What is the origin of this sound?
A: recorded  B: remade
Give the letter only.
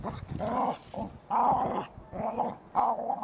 A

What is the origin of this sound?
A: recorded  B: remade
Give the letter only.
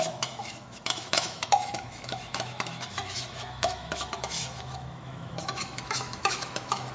B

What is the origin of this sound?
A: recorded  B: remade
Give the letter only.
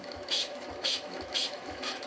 B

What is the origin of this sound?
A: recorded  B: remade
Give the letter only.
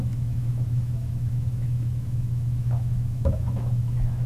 B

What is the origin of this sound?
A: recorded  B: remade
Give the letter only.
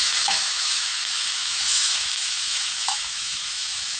B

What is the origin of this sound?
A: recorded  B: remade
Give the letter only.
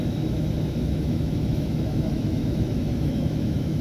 B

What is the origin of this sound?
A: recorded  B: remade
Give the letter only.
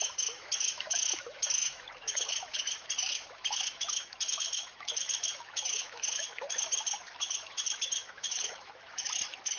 B